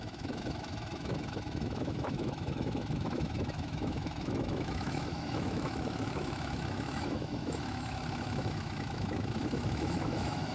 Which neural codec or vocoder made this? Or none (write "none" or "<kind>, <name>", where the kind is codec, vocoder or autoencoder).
autoencoder, DAC-VAE